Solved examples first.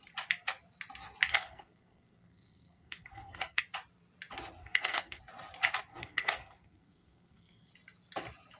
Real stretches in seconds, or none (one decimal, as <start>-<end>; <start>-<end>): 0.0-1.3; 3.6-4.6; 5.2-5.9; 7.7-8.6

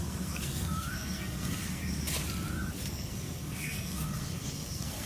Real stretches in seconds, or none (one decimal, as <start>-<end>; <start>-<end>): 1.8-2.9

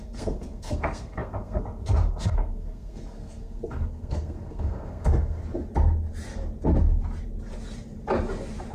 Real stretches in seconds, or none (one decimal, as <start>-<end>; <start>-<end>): 5.4-8.7

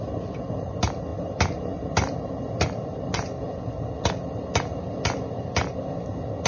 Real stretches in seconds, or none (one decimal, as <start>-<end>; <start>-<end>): 0.0-6.5